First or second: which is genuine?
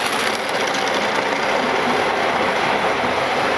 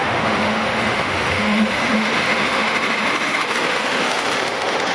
first